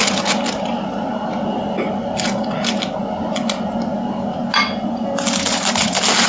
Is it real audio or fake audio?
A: real